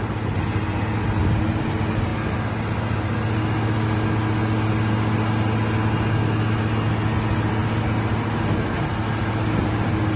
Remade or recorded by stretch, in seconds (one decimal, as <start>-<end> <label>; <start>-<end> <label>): 0.0-10.2 recorded